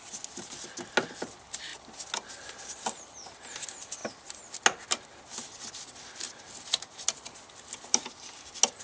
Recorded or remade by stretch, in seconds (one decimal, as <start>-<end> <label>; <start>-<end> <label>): 0.0-8.8 recorded